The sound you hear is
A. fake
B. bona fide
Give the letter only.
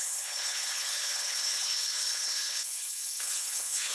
A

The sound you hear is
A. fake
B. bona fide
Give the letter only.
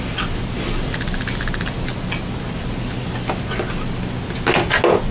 B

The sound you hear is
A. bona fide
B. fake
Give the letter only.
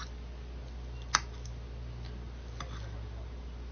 A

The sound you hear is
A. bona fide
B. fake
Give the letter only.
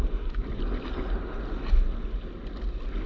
A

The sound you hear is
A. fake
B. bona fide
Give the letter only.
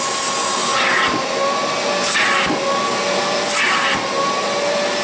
B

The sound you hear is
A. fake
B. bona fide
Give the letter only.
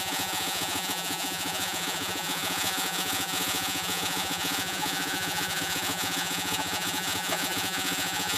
A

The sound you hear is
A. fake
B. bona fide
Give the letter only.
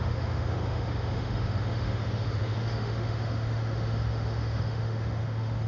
A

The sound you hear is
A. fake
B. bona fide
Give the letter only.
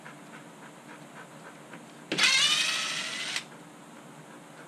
B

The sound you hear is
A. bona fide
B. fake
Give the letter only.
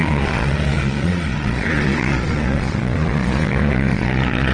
B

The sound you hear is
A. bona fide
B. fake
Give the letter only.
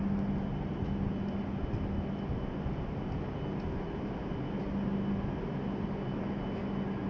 A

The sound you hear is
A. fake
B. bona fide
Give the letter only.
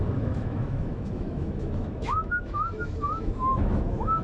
A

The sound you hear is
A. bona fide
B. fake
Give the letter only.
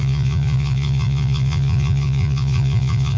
B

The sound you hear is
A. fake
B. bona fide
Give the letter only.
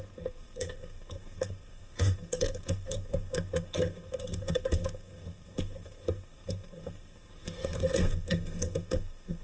A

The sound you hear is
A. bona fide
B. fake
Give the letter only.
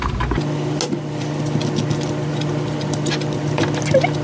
A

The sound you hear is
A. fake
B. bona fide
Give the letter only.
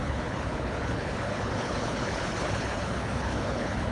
A